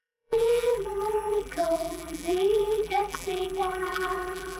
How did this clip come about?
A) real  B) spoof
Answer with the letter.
B